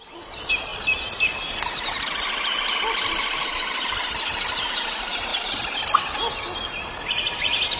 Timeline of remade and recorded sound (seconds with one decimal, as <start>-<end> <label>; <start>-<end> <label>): 0.0-0.7 recorded; 0.7-4.6 remade; 4.6-5.3 recorded; 5.3-6.9 remade; 6.9-7.8 recorded